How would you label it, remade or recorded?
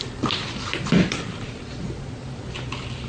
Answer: recorded